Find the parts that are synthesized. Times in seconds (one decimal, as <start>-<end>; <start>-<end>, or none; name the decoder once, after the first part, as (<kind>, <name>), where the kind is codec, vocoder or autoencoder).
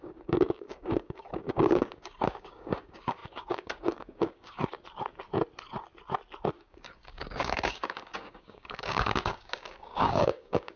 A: 0.0-4.6 (codec, DAC); 6.6-10.8